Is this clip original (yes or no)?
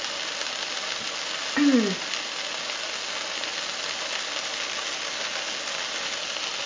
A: yes